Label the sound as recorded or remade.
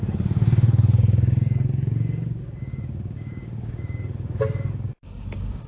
remade